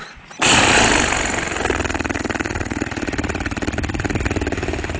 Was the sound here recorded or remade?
recorded